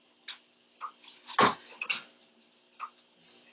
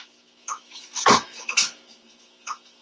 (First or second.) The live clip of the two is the first